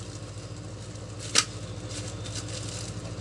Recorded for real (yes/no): yes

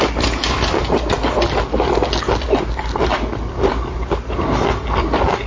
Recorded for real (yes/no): yes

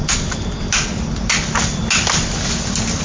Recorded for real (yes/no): yes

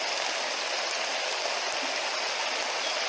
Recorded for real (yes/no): yes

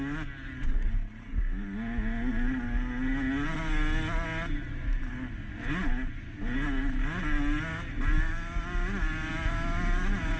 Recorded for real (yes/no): yes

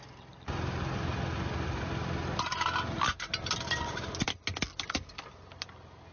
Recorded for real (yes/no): yes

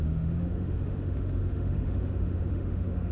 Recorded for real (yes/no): no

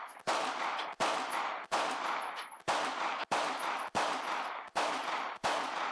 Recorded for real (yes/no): yes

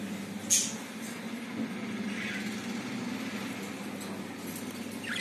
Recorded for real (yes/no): yes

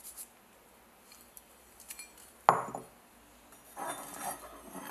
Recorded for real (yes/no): yes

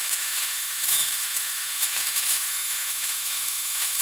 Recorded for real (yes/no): no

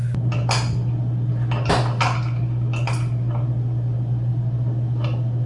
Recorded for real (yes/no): yes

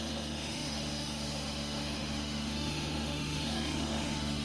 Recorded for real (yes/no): no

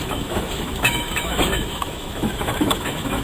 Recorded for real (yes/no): no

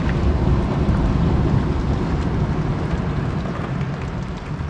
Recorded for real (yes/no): yes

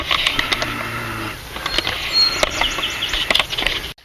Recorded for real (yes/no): yes